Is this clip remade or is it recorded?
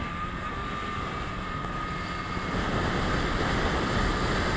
recorded